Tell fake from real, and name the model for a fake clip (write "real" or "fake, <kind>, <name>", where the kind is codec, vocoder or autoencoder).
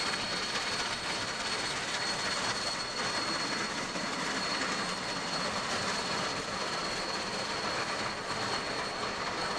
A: real